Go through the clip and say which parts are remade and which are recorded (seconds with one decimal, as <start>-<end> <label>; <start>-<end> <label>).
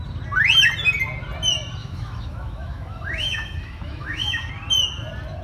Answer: 0.0-1.8 recorded; 1.8-4.5 remade; 4.5-5.4 recorded